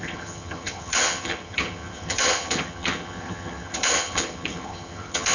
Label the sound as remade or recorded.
remade